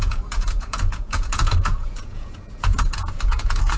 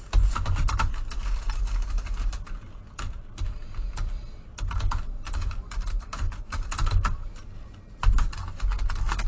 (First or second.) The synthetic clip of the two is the first